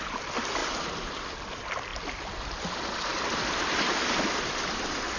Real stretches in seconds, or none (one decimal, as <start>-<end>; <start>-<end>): 0.0-3.1